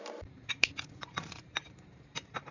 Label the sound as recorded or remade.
remade